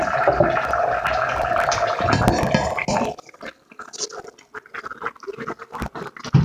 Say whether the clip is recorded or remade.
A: recorded